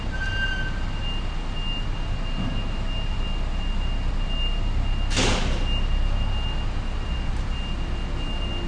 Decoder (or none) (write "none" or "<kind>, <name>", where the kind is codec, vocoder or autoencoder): none